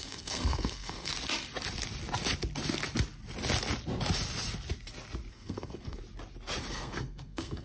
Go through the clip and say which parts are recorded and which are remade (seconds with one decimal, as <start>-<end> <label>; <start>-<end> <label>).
0.0-1.1 remade; 1.1-5.3 recorded; 5.3-6.0 remade; 6.0-6.7 recorded; 6.7-7.6 remade